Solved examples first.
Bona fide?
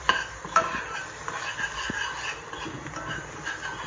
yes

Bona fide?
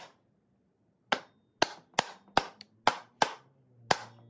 yes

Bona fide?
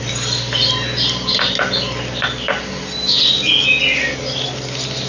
yes